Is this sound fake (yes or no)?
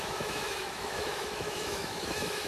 yes